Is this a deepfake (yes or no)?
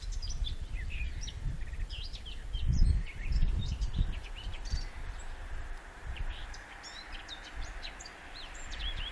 yes